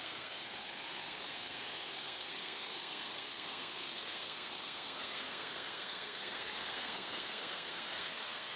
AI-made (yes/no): yes